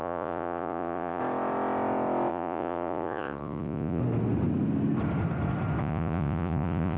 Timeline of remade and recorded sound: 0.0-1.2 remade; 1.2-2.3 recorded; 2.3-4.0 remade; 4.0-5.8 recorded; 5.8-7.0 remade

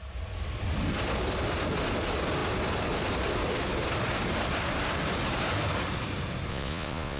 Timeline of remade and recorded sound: 0.0-6.5 recorded; 6.5-7.2 remade

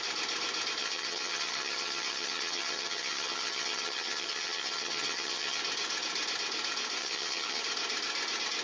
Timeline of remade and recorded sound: 0.0-0.8 recorded; 0.8-5.6 remade; 5.6-7.0 recorded; 7.0-7.6 remade; 7.6-8.6 recorded

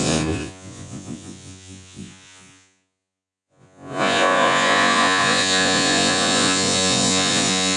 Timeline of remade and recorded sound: 0.0-7.8 remade

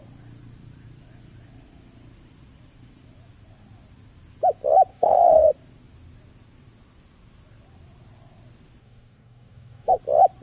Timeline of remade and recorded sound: 0.0-4.9 recorded; 4.9-5.5 remade; 5.5-8.8 recorded; 8.8-10.0 remade; 10.0-10.4 recorded

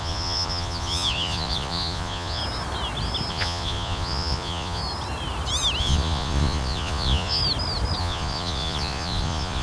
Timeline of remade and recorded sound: 0.0-2.4 remade; 2.4-3.3 recorded; 3.3-4.8 remade; 4.8-5.8 recorded; 5.8-7.4 remade; 7.4-8.0 recorded; 8.0-9.6 remade

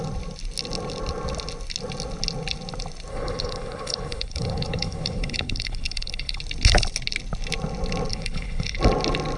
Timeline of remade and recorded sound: 0.0-3.1 recorded; 3.1-6.4 remade; 6.4-8.1 recorded; 8.1-8.8 remade; 8.8-9.4 recorded